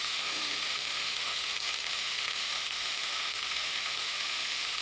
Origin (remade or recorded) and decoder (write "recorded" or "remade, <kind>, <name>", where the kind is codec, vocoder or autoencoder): remade, autoencoder, DAC-VAE